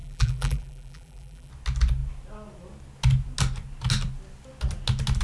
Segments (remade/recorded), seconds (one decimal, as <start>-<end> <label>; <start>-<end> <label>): 0.0-1.5 remade; 1.5-5.2 recorded